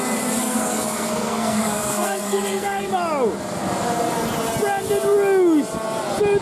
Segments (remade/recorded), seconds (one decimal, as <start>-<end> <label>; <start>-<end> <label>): 0.0-0.4 recorded; 0.4-2.9 remade; 2.9-6.4 recorded